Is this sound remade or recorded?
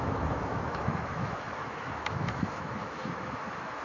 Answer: remade